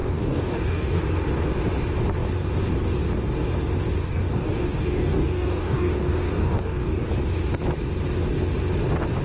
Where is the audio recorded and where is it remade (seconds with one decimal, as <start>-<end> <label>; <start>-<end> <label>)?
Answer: 0.0-1.0 remade; 1.0-4.0 recorded; 4.0-7.1 remade; 7.1-9.2 recorded